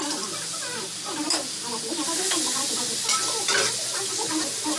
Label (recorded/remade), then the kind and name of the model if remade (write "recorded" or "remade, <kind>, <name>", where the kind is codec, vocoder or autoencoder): recorded